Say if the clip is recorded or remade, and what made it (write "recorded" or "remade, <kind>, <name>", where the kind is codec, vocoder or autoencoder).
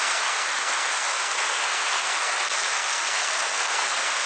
remade, codec, SNAC